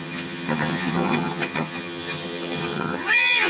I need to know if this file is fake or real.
fake